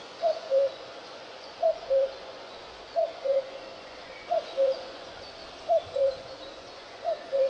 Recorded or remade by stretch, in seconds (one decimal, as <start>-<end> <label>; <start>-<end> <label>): 0.0-5.4 remade; 5.4-5.9 recorded; 5.9-7.5 remade